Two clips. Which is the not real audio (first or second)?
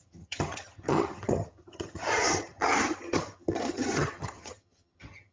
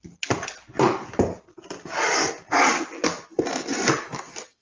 first